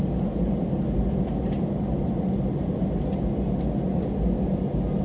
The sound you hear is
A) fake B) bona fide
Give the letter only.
B